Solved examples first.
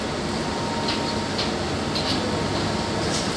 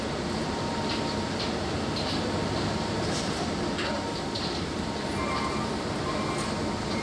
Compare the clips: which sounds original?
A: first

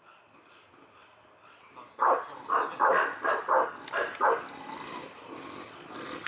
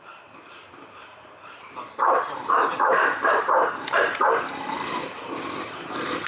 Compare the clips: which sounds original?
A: first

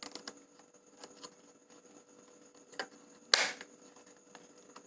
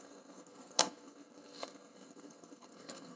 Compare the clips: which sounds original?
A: first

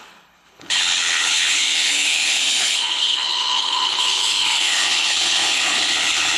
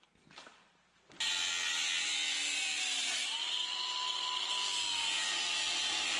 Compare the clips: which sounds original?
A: second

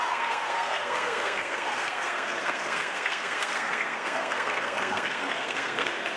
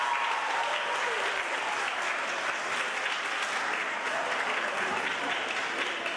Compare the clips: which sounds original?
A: second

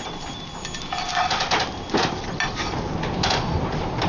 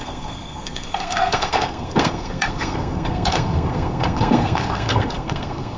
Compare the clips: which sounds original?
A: first